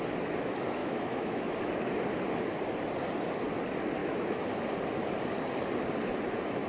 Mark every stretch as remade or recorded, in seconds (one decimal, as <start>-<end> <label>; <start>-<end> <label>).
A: 0.0-0.8 recorded; 0.8-1.4 remade; 1.4-4.0 recorded; 4.0-4.5 remade; 4.5-6.7 recorded